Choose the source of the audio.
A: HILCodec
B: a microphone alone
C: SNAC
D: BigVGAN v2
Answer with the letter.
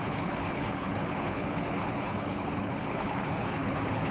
A